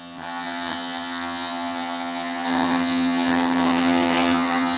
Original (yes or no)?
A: no